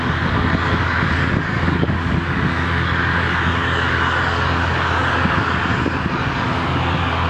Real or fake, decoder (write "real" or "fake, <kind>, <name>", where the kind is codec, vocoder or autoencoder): fake, codec, DAC